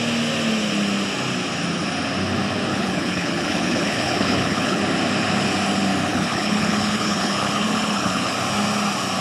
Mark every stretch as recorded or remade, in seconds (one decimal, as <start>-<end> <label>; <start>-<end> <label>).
0.0-2.7 recorded; 2.7-4.8 remade; 4.8-6.1 recorded; 6.1-8.3 remade; 8.3-9.2 recorded